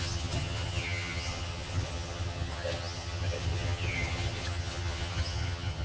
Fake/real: fake